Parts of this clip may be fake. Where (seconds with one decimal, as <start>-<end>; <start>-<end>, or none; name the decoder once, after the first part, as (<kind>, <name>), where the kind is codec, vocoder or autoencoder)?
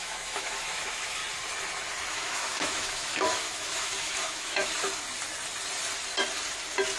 0.0-1.2 (autoencoder, DAC-VAE); 2.1-4.7